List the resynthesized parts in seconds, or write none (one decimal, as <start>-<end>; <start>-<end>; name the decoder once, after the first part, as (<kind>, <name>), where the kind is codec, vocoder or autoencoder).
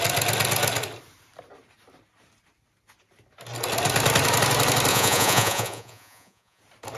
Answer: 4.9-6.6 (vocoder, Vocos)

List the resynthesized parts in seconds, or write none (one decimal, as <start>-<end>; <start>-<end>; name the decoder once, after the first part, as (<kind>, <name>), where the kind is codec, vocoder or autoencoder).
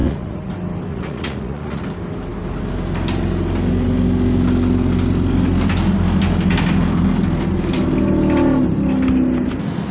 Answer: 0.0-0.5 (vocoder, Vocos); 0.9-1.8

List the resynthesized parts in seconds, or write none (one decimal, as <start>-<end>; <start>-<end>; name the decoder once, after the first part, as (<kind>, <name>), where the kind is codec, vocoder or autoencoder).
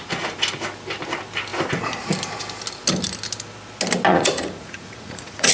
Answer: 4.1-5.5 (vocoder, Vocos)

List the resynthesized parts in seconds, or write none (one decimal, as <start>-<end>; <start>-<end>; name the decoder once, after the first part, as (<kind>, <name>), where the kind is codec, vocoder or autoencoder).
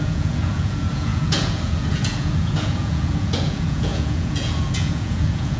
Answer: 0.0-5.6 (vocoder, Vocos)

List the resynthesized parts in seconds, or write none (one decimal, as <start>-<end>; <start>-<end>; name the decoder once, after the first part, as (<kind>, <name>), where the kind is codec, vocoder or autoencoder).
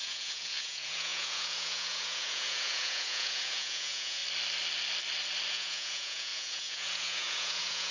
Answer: 0.0-4.2 (vocoder, Vocos); 5.5-7.9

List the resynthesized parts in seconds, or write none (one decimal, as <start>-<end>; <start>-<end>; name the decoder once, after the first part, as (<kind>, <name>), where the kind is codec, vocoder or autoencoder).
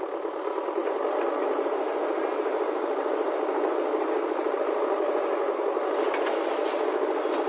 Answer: none